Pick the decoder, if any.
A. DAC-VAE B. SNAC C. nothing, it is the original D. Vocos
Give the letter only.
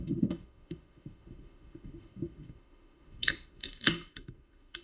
A